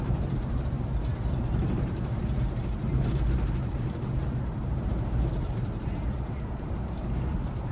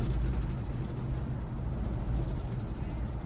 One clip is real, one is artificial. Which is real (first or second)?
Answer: second